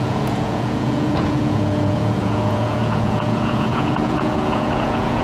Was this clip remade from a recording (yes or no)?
yes